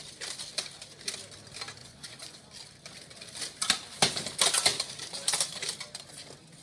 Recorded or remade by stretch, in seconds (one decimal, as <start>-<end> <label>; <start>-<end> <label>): 0.0-1.8 recorded; 1.8-2.4 remade; 2.4-6.6 recorded